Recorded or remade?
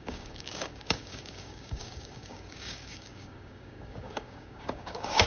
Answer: remade